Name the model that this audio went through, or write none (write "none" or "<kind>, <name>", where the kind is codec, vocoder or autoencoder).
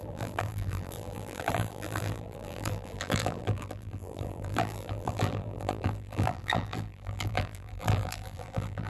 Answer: vocoder, BigVGAN v2